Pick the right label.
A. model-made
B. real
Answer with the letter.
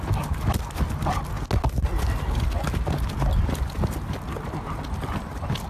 B